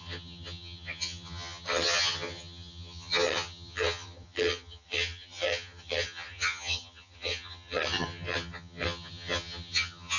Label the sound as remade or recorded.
remade